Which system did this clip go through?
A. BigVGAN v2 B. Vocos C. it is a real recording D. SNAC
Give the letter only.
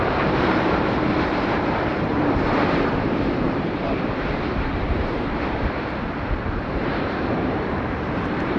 A